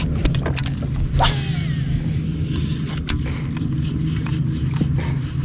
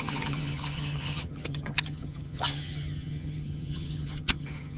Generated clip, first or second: second